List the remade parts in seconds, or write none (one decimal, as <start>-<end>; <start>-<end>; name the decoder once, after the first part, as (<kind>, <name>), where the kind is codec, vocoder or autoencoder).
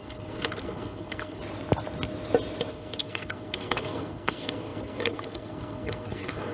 0.0-1.4 (codec, SNAC); 2.7-6.5